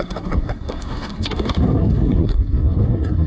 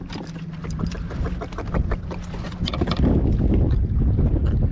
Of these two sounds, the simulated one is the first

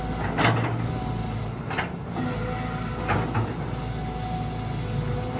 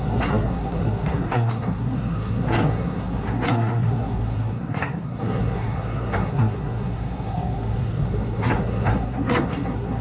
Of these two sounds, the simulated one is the second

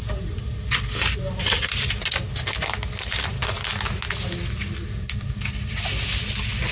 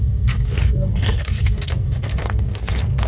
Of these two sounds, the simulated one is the second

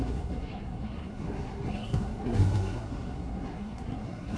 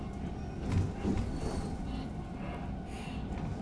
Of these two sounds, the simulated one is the first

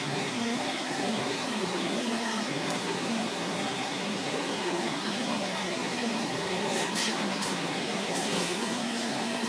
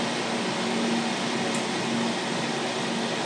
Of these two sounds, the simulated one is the first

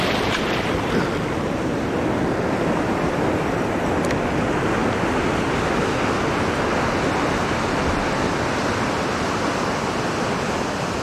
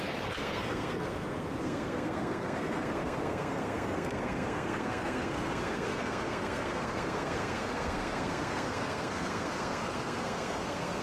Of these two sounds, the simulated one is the second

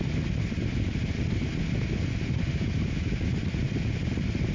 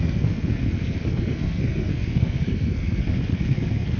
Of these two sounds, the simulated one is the second